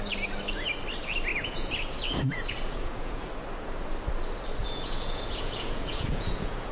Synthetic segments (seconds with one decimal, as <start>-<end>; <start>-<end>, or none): 1.3-3.3; 4.6-6.7